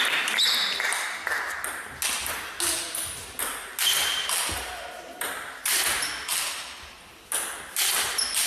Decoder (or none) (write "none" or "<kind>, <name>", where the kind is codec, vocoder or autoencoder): none